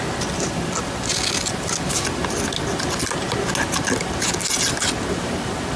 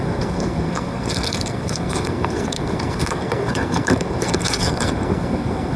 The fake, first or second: second